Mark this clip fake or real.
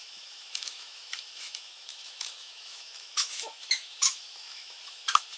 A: fake